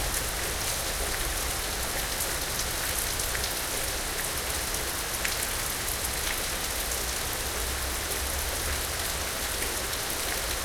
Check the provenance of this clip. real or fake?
real